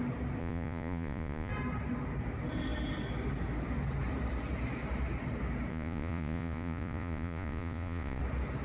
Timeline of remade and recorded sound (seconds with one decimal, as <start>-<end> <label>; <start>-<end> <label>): 0.0-0.4 recorded; 0.4-1.5 remade; 1.5-5.7 recorded; 5.7-8.2 remade; 8.2-8.6 recorded